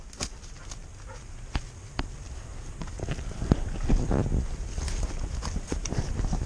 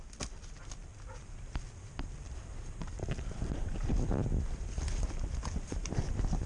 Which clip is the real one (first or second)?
first